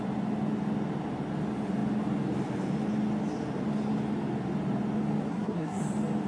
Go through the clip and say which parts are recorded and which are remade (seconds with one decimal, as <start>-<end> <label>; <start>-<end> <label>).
0.0-5.3 recorded; 5.3-5.8 remade; 5.8-6.3 recorded